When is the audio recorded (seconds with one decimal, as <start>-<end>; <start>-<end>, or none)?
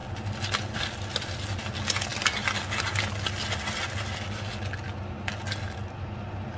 0.0-6.6